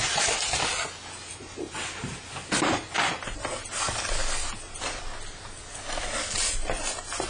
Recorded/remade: recorded